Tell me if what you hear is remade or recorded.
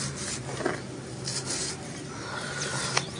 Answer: recorded